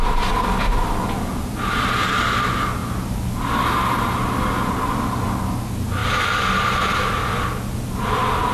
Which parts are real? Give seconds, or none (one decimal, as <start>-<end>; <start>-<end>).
0.0-2.8; 3.3-8.5